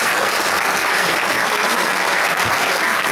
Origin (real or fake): fake